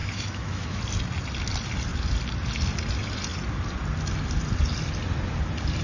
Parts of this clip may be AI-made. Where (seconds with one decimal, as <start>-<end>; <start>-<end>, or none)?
0.0-0.8